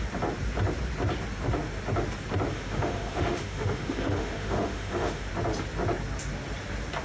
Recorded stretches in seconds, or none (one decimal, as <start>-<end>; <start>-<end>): 0.0-2.5; 5.3-7.0